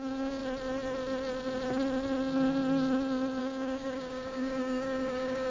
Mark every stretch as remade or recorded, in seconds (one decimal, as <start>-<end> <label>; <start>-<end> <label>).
0.0-0.4 remade; 0.4-3.4 recorded; 3.4-5.5 remade